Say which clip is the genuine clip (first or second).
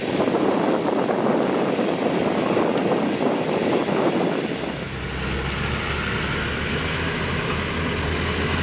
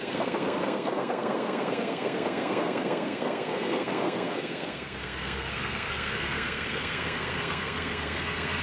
first